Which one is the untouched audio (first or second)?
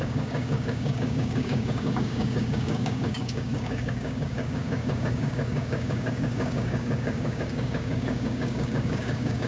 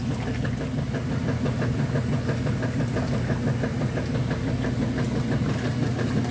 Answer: second